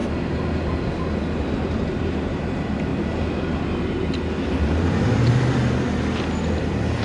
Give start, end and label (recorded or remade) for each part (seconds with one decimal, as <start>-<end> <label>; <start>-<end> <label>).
0.0-2.0 recorded; 2.0-2.9 remade; 2.9-6.6 recorded; 6.6-7.0 remade